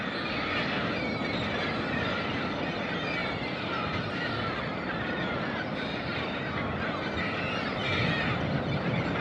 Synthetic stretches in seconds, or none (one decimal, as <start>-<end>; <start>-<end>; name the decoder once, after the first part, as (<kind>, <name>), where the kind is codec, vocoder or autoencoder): none